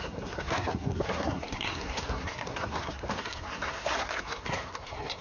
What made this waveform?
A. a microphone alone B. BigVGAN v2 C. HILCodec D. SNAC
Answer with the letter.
D